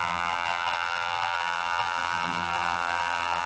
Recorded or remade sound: remade